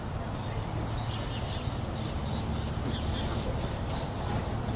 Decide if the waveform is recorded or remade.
recorded